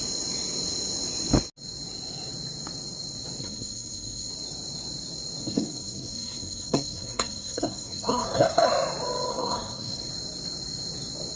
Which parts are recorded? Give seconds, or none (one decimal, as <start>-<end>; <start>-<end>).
0.0-3.4; 4.3-5.4; 8.7-9.3; 10.1-11.4